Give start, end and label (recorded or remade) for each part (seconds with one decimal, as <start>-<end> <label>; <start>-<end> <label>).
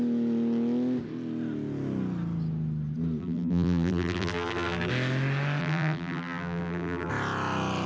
0.0-3.2 recorded; 3.2-4.9 remade; 4.9-5.6 recorded; 5.6-7.1 remade; 7.1-7.9 recorded